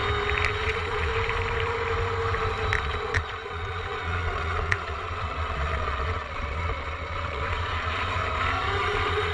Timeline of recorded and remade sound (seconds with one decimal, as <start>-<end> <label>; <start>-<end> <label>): 0.0-0.6 recorded; 0.6-1.1 remade; 1.1-2.8 recorded; 2.8-8.2 remade; 8.2-8.8 recorded; 8.8-9.3 remade